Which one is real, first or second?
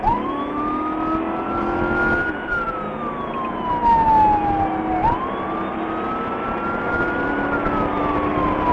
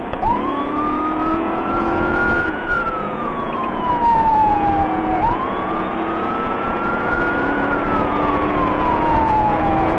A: first